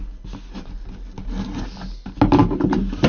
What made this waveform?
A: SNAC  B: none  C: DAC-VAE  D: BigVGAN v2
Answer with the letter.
B